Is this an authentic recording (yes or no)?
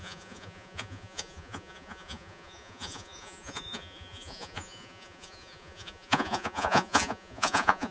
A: no